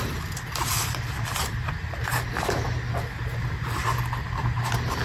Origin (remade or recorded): recorded